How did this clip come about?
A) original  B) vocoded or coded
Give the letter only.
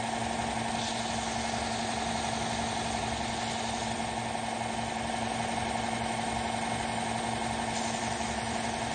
A